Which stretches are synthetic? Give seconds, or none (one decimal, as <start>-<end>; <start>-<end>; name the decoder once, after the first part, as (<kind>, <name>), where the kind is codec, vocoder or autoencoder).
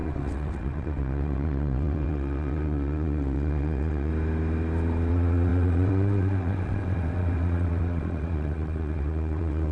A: 0.0-4.1 (vocoder, WaveNeXt); 5.1-9.7